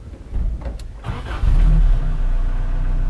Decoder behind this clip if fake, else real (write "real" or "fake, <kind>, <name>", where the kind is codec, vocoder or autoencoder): real